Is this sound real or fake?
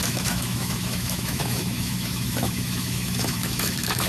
fake